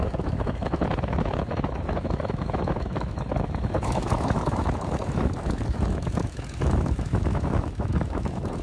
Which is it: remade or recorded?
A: remade